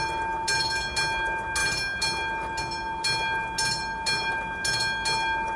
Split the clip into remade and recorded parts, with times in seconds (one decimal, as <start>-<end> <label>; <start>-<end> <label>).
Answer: 0.0-5.6 recorded